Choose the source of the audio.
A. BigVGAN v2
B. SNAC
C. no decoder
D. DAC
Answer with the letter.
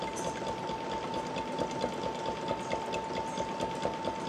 C